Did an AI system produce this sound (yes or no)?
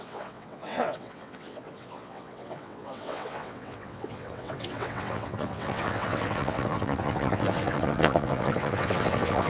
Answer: yes